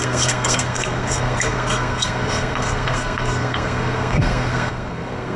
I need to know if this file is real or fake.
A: fake